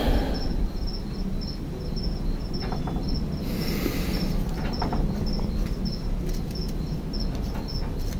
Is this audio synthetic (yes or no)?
no